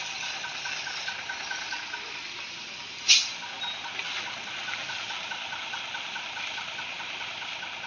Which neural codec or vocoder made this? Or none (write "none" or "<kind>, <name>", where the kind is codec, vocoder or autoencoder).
none